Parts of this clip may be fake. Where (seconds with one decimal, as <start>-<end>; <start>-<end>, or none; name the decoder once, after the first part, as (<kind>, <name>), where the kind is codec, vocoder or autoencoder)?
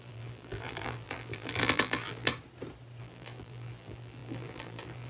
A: 0.0-2.3 (vocoder, BigVGAN v2); 3.0-5.1